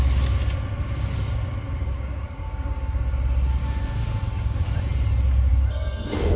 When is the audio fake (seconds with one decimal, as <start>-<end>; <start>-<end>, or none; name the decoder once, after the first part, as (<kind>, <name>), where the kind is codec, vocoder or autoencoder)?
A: 1.8-3.0 (codec, DAC); 3.6-4.9; 5.5-6.4